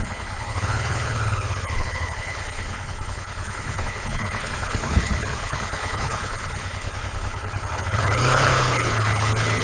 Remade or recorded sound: remade